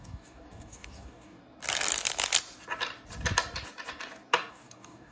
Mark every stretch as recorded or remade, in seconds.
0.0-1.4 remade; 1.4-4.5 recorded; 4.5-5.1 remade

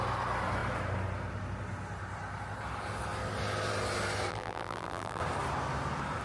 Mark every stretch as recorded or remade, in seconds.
0.0-4.3 recorded; 4.3-5.2 remade; 5.2-6.2 recorded

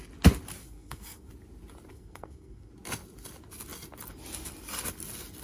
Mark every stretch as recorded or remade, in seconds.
0.0-0.6 recorded; 0.6-1.3 remade; 1.3-1.9 recorded; 1.9-2.7 remade; 2.7-5.4 recorded

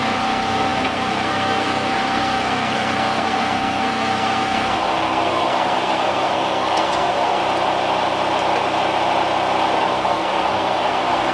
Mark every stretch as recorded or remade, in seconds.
0.0-7.4 remade; 7.4-9.8 recorded; 9.8-11.3 remade

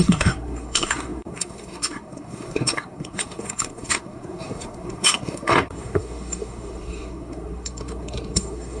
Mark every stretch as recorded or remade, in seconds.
0.0-8.8 remade